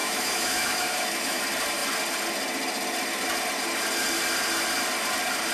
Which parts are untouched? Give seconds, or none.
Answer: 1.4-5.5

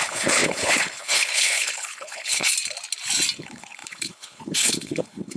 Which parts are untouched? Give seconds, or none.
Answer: 2.5-3.4

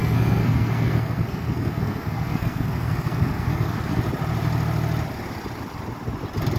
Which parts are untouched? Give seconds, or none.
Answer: 4.0-6.6

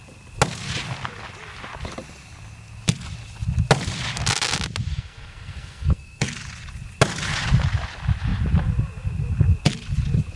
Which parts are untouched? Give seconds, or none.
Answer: 0.0-4.9; 6.3-10.4